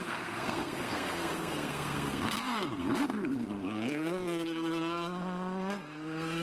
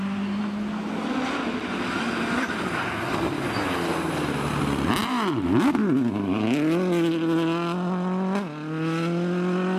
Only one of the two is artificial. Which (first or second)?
first